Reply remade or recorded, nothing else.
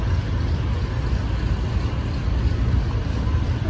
recorded